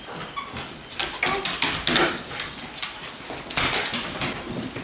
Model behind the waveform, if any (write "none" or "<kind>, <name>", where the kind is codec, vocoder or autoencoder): none